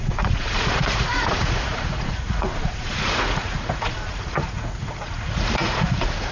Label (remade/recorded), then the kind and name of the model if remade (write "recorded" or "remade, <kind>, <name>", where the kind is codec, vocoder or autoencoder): remade, vocoder, Vocos